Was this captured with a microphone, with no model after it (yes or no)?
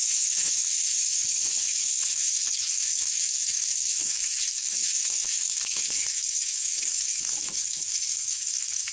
no